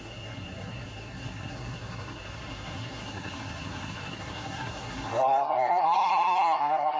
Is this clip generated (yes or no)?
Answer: yes